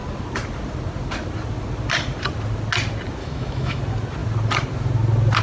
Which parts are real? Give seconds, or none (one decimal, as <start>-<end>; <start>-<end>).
0.0-3.2; 3.8-5.4